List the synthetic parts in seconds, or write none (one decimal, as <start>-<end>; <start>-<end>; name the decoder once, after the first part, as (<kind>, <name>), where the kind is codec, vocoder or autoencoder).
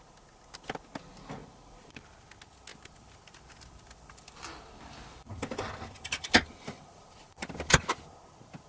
1.4-2.0 (vocoder, BigVGAN v2); 2.7-7.8